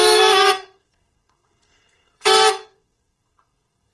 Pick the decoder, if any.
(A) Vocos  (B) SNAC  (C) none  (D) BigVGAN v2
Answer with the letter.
B